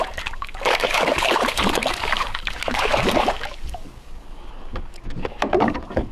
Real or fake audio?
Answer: fake